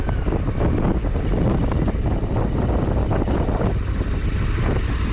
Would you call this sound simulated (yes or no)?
no